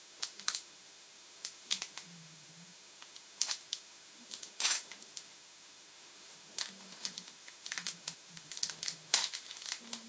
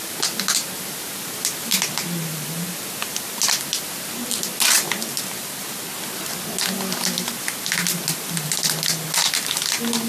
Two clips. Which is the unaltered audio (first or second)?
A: second